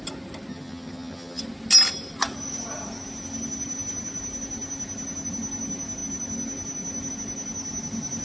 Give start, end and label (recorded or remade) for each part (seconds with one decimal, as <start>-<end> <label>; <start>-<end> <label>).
0.0-0.5 recorded; 0.5-1.4 remade; 1.4-8.2 recorded